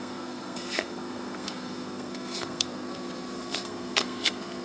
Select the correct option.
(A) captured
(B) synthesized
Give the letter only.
B